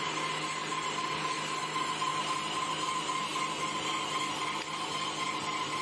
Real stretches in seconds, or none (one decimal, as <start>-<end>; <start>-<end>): 0.0-0.6; 1.6-2.1